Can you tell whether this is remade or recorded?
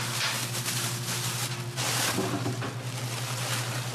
recorded